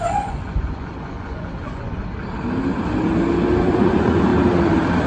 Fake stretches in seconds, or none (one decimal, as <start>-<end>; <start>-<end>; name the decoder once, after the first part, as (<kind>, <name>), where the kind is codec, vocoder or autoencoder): 0.0-2.0 (vocoder, Vocos); 3.8-4.3

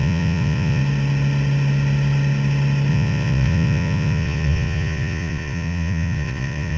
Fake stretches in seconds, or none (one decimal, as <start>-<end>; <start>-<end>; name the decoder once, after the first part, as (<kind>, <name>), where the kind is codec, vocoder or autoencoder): 0.0-0.8 (vocoder, Vocos); 2.9-6.8

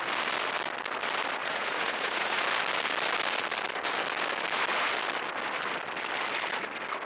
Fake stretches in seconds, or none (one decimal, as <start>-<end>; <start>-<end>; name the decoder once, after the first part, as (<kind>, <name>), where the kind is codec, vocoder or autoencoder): 1.4-2.4 (vocoder, Vocos)

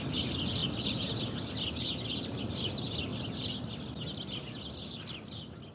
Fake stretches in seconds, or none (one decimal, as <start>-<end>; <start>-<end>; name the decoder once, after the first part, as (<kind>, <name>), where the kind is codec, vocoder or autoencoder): none

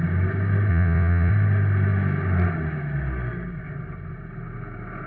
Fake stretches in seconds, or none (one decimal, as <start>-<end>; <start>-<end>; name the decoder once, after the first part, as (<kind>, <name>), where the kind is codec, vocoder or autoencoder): 0.7-1.3 (vocoder, Vocos)

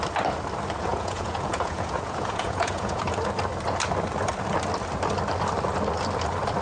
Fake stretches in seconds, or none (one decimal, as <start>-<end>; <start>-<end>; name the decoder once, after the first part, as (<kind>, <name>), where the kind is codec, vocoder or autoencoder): 0.9-3.0 (vocoder, Vocos)

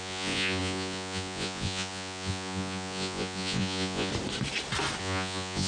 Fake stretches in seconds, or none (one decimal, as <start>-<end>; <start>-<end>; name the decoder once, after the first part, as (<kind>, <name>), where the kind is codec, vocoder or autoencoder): 0.0-4.1 (vocoder, Vocos); 5.0-5.7

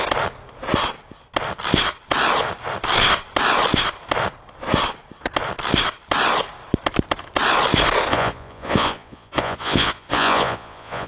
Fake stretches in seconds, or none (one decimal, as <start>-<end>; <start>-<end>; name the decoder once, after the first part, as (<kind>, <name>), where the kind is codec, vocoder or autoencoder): 8.1-11.1 (vocoder, Vocos)